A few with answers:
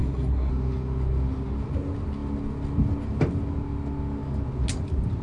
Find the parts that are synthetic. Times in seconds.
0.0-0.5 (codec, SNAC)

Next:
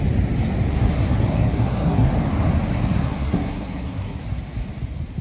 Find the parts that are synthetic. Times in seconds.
0.7-2.1 (codec, SNAC); 2.8-4.2

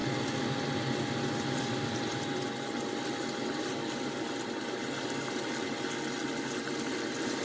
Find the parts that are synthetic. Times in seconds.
none

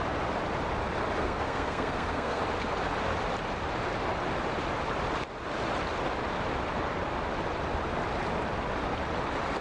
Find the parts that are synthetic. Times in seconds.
1.2-2.4 (codec, SNAC)

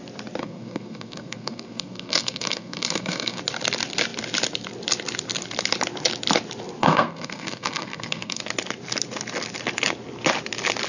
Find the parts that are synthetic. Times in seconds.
0.4-3.4 (codec, SNAC); 6.8-8.4

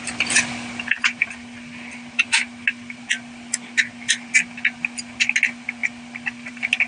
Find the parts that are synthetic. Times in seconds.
none

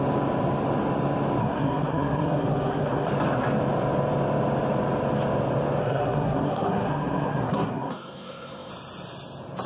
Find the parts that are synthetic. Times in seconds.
1.4-3.1 (codec, SNAC); 5.8-8.7